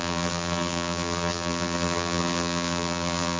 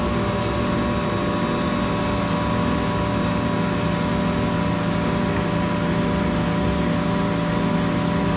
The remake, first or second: first